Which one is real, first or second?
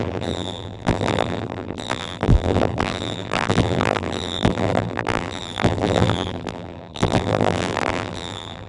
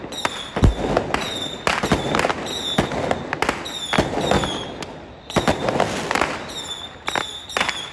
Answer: second